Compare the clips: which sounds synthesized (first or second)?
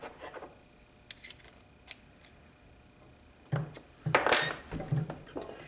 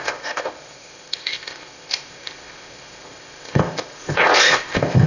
second